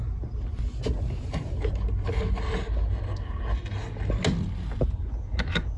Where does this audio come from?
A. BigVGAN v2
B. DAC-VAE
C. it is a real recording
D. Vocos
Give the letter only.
C